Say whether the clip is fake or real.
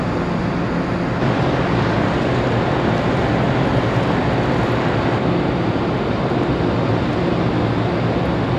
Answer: real